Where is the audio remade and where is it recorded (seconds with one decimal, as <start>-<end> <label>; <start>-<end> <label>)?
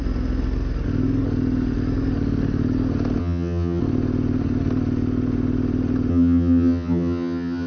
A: 0.0-3.2 recorded; 3.2-3.8 remade; 3.8-6.1 recorded; 6.1-7.7 remade